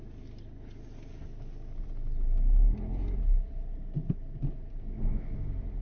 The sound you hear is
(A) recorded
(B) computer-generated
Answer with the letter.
A